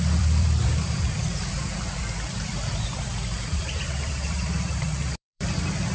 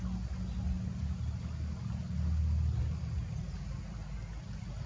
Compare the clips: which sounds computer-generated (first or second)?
first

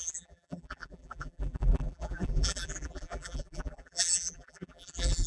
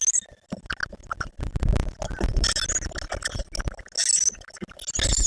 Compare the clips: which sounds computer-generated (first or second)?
first